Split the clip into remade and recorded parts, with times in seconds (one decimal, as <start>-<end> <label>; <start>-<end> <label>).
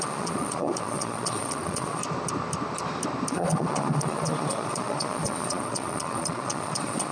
0.0-2.0 remade; 2.0-3.3 recorded; 3.3-7.1 remade